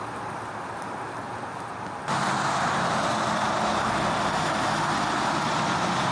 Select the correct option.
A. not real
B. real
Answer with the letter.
B